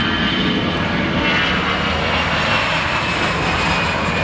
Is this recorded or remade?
recorded